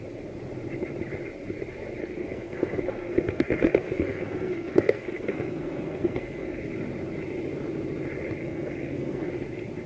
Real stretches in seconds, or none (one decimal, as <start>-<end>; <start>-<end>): 0.0-2.0; 6.6-8.4; 9.3-9.9